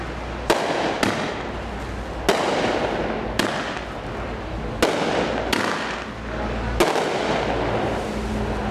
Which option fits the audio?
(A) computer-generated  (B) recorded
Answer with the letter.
B